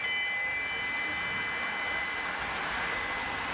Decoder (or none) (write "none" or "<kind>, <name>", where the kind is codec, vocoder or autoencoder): none